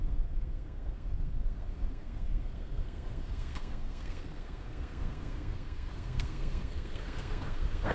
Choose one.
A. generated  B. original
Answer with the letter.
A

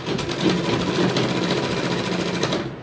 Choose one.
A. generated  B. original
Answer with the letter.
B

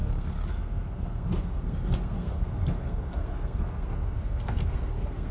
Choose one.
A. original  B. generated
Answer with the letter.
B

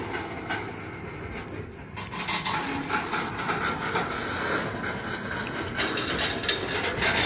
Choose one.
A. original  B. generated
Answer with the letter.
A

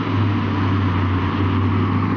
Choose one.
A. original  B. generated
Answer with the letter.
A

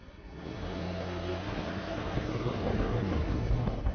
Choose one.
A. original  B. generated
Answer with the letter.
B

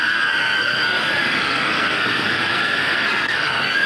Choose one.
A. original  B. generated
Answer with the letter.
B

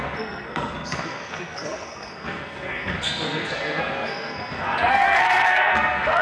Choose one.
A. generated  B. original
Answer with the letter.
A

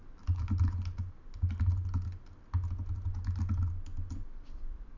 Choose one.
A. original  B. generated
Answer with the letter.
A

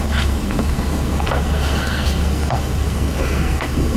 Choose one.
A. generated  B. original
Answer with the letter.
A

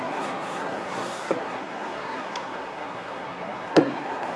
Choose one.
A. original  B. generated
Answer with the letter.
B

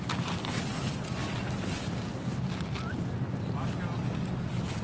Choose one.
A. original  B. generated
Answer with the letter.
A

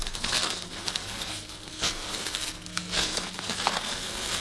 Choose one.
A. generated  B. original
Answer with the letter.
A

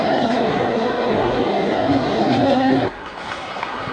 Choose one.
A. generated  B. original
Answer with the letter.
A